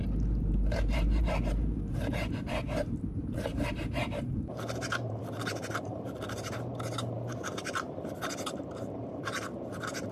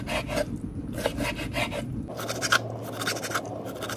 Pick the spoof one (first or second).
first